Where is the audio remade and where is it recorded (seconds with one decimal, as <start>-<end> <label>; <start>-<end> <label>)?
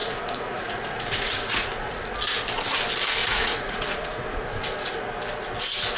0.0-2.0 remade; 2.0-3.2 recorded; 3.2-5.0 remade; 5.0-6.0 recorded